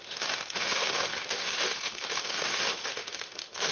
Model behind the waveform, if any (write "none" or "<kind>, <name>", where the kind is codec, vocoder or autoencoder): autoencoder, DAC-VAE